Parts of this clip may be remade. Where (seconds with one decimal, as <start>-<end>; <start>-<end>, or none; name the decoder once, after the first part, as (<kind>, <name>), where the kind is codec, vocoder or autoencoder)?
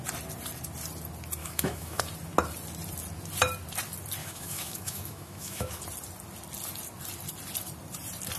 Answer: 1.4-2.0 (autoencoder, DAC-VAE); 4.2-5.8